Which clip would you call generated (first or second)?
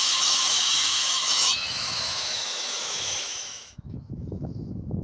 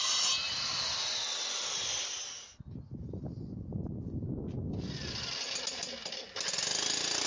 first